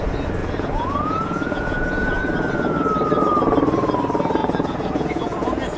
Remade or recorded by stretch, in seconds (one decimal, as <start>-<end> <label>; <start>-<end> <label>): 0.0-0.4 recorded; 0.4-2.2 remade; 2.2-4.4 recorded; 4.4-5.8 remade